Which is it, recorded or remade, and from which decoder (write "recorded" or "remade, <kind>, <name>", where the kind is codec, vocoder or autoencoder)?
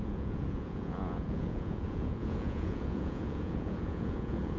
remade, vocoder, Vocos